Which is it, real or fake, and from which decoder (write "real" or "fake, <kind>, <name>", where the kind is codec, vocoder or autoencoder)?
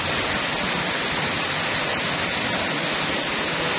real